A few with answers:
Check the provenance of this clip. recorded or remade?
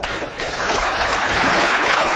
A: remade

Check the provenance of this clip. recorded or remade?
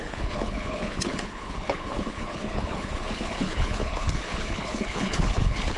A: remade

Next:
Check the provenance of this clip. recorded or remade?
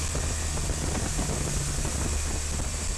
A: recorded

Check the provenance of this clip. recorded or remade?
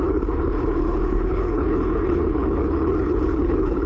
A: remade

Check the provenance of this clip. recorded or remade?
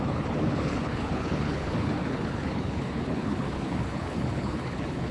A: remade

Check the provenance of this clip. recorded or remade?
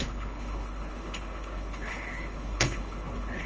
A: remade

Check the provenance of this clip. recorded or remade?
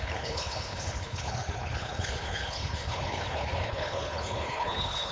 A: remade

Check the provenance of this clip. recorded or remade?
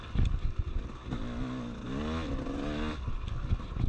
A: recorded